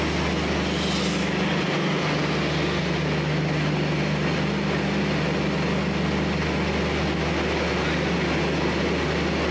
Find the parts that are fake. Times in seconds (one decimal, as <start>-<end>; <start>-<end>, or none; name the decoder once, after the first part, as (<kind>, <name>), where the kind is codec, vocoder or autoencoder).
none